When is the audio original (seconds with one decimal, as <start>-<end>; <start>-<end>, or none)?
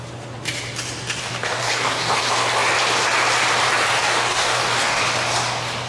0.0-1.2; 2.2-4.0; 5.0-5.9